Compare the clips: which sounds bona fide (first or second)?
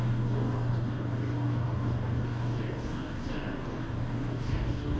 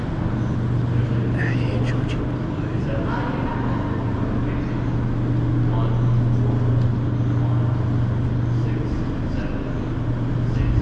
second